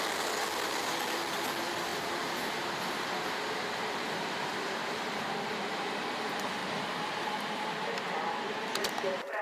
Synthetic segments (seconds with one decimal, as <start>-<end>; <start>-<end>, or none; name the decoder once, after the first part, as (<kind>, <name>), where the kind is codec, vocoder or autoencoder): 1.9-3.3 (vocoder, BigVGAN v2); 6.6-7.6